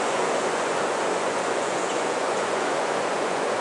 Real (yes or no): no